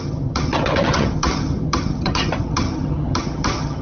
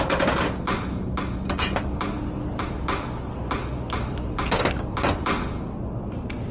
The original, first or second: second